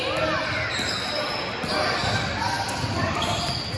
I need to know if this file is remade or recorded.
recorded